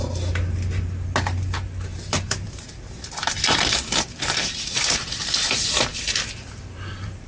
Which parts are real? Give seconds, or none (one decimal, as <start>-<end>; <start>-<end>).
0.0-1.9; 5.3-5.9